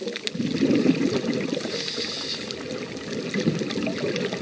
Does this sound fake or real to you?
real